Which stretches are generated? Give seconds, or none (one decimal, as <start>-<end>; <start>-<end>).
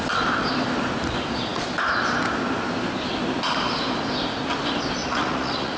5.0-5.8